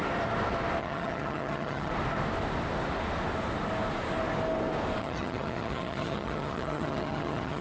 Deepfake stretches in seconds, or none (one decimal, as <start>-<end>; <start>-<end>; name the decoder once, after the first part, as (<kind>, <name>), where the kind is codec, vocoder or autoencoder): 0.8-1.9 (vocoder, HiFi-GAN); 5.0-7.6